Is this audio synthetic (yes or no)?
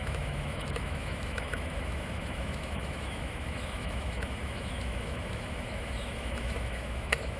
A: yes